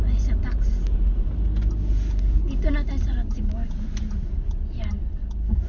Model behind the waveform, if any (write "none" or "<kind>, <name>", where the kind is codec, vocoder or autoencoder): none